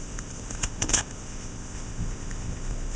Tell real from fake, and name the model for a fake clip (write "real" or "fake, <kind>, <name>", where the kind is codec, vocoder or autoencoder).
fake, codec, ZipCodec